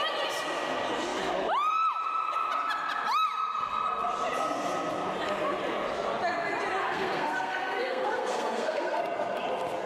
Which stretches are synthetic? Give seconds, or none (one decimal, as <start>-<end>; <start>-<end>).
6.8-9.0